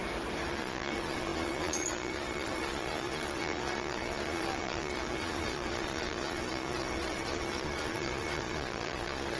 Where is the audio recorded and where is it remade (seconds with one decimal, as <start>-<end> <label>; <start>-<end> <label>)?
0.0-0.5 recorded; 0.5-9.4 remade